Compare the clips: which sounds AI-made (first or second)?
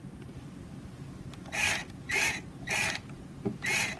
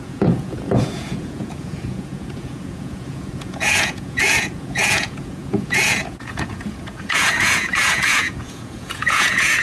second